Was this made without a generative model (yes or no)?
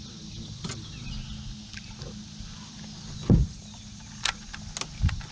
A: yes